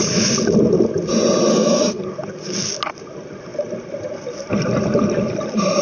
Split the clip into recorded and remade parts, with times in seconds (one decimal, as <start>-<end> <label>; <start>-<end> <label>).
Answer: 0.0-1.5 recorded; 1.5-2.0 remade; 2.0-5.8 recorded